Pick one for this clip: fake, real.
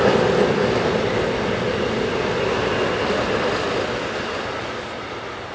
real